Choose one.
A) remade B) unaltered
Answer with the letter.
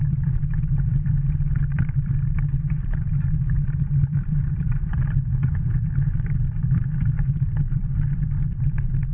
A